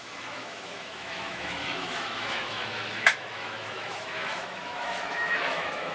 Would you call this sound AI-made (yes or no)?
yes